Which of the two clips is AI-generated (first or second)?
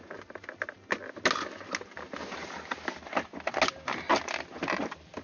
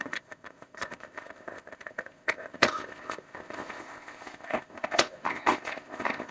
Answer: second